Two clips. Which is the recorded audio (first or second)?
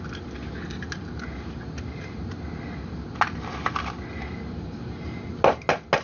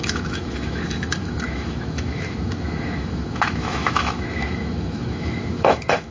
first